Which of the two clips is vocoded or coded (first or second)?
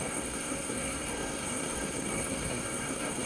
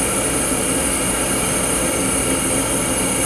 first